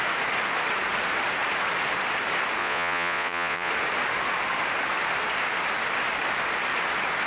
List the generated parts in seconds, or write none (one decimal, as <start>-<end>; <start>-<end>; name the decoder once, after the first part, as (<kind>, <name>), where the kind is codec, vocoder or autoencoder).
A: 2.6-3.7 (vocoder, Vocos)